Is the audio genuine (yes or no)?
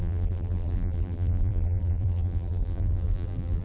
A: no